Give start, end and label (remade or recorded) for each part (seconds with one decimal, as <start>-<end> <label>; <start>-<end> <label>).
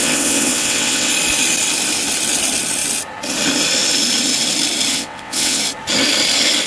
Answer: 0.0-1.1 remade; 1.1-4.9 recorded; 4.9-5.6 remade; 5.6-6.7 recorded